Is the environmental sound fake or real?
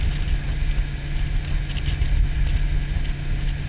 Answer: real